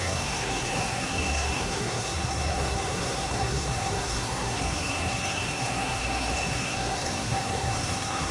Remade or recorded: remade